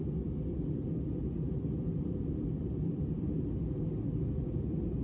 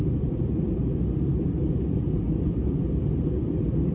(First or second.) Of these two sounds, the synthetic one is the second